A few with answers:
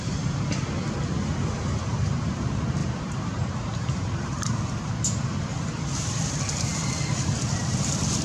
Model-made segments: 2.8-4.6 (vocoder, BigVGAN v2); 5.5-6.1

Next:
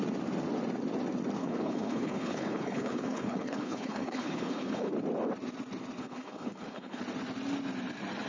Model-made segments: 1.4-4.9 (codec, HILCodec); 6.0-7.0

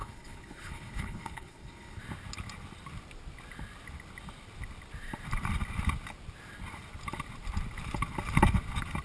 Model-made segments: 0.0-2.0 (codec, HILCodec)

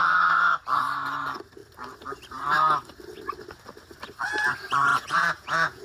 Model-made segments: 4.9-5.8 (vocoder, Vocos)

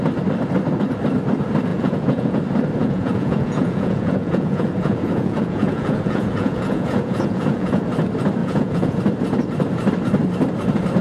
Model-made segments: 1.7-2.4 (vocoder, Vocos); 2.8-7.8; 8.4-9.0

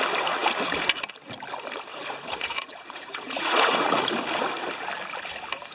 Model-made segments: 1.9-4.1 (vocoder, Vocos)

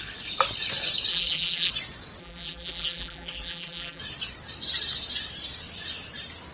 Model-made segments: 1.1-1.7 (vocoder, BigVGAN v2); 2.2-4.0